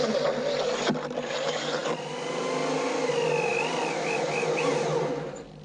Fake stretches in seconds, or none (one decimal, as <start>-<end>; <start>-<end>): none